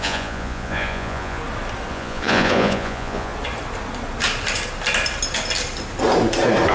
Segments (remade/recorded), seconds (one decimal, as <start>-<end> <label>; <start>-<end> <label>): 0.0-1.4 remade; 1.4-1.9 recorded; 1.9-3.3 remade; 3.3-6.7 recorded